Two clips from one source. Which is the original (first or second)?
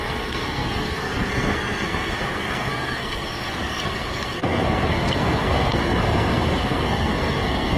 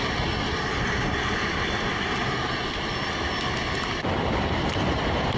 second